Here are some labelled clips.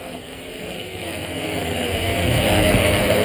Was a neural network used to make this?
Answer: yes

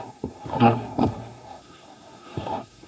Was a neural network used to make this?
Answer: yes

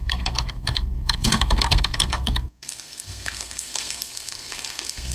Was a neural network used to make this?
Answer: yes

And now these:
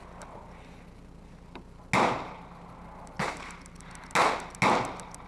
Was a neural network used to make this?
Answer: no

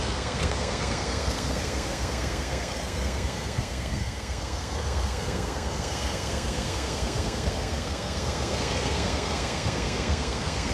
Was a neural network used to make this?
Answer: yes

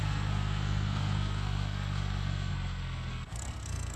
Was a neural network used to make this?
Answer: yes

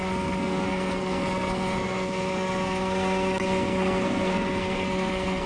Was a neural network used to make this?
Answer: yes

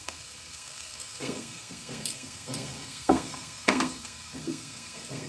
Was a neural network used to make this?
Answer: yes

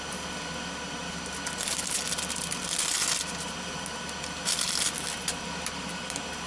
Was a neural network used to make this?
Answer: no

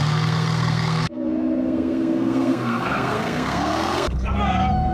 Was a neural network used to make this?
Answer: yes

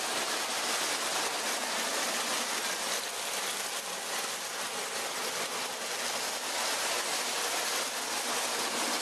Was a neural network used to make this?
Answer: no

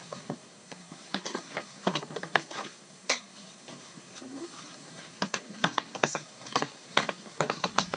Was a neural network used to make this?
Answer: yes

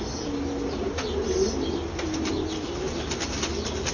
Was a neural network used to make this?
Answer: no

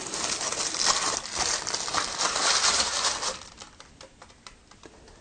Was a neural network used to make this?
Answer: no